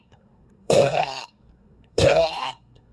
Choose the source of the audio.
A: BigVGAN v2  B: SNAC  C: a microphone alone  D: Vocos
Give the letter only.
B